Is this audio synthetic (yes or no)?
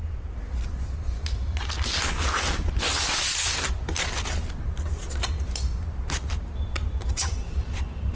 no